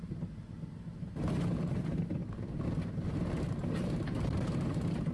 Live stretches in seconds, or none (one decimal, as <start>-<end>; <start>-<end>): 2.2-2.9